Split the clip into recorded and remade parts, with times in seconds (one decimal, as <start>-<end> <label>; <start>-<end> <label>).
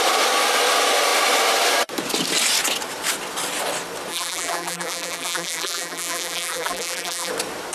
0.0-4.1 recorded; 4.1-7.3 remade; 7.3-7.7 recorded